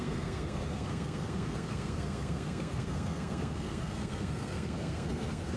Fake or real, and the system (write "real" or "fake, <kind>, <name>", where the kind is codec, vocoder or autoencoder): fake, codec, SNAC